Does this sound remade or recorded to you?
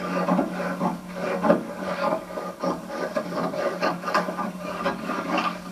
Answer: remade